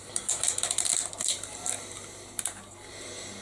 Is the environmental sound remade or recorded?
recorded